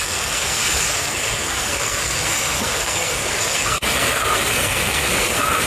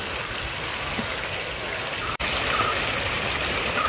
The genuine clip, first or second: second